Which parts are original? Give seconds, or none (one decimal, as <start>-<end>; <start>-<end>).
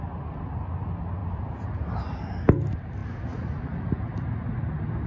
0.0-5.1